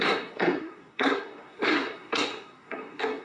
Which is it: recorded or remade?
remade